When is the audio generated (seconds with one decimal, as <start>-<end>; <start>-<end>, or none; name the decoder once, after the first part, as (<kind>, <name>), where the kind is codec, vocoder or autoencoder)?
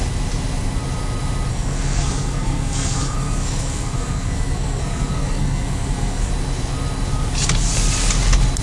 1.5-6.3 (codec, SNAC)